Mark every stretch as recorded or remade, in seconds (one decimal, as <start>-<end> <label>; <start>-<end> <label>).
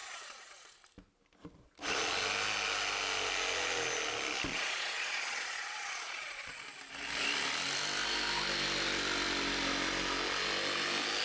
0.0-0.8 remade; 0.8-4.5 recorded; 4.5-6.6 remade; 6.6-11.2 recorded